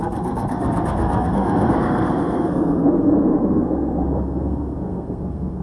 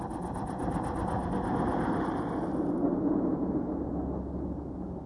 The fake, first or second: first